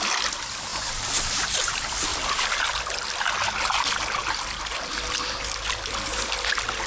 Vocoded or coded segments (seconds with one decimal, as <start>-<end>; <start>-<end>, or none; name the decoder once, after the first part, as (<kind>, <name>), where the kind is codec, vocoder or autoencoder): none

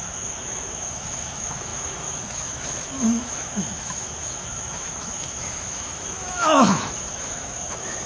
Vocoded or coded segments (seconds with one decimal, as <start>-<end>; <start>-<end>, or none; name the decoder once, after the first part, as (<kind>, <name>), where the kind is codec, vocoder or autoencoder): 0.0-8.1 (autoencoder, DAC-VAE)

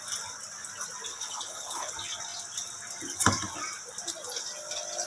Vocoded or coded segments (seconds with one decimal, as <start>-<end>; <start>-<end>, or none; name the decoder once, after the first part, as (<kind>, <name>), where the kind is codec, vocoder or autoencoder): 1.1-1.9 (codec, HILCodec)

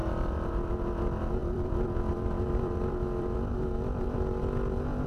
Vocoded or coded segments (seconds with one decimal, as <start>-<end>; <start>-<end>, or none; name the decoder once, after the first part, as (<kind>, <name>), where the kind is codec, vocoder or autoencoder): 1.4-4.4 (vocoder, BigVGAN v2)

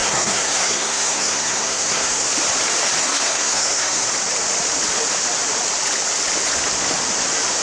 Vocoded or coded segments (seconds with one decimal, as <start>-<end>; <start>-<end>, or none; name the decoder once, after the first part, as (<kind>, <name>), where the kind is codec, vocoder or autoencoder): 0.0-2.3 (codec, SNAC); 3.0-4.1

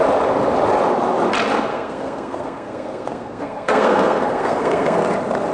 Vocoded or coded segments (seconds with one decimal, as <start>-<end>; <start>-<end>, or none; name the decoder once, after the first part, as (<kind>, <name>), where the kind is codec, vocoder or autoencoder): 1.7-5.0 (codec, SNAC)